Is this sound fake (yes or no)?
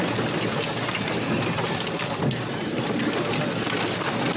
no